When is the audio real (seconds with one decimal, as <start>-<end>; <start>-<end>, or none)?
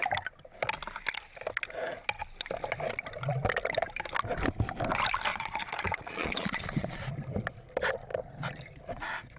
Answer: 0.0-5.3; 7.1-9.4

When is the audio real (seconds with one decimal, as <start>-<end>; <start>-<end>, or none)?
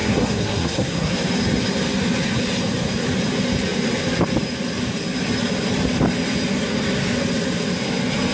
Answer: 1.1-8.3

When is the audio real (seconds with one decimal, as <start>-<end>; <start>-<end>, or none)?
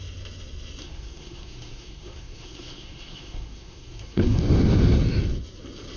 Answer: 0.0-0.8; 4.4-6.0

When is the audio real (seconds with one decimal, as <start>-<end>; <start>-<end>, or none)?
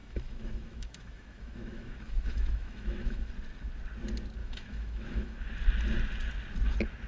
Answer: 3.3-4.4; 5.5-7.1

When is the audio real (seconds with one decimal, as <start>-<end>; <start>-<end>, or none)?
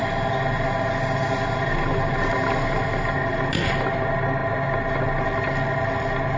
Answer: 0.0-6.4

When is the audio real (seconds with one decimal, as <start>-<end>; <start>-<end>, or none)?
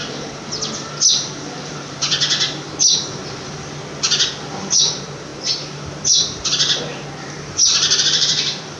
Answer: 0.0-1.1; 2.1-4.6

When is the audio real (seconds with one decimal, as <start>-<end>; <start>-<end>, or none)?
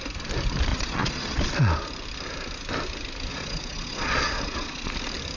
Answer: 0.0-0.7; 1.4-3.3; 4.9-5.4